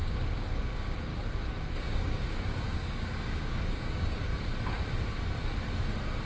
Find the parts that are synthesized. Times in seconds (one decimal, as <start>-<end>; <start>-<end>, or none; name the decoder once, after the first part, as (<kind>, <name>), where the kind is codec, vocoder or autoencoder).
0.0-1.1 (codec, DAC); 1.7-4.3